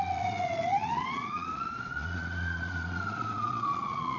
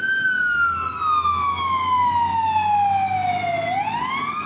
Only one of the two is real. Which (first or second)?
second